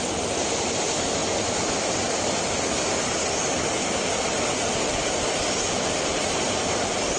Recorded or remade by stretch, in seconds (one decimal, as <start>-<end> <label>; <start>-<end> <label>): 0.0-7.2 recorded